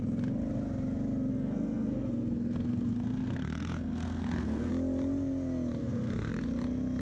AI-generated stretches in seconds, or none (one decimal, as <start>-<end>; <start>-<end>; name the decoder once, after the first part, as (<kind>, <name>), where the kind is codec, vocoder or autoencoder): 1.3-4.7 (codec, SNAC); 5.8-6.3